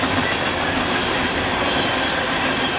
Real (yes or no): yes